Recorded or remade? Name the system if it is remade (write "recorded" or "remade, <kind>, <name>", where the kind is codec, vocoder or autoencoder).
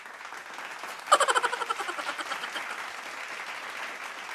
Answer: recorded